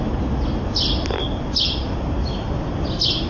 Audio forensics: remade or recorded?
recorded